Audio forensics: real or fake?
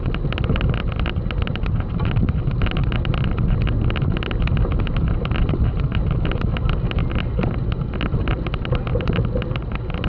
real